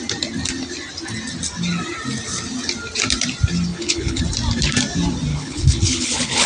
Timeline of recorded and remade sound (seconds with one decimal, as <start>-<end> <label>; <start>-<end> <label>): 0.0-3.7 recorded; 3.7-4.2 remade; 4.2-5.3 recorded; 5.3-6.5 remade